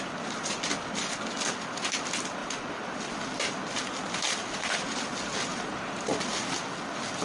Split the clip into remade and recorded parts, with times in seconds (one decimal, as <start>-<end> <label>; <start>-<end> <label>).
0.0-2.4 recorded; 2.4-3.0 remade; 3.0-5.5 recorded; 5.5-6.1 remade; 6.1-7.2 recorded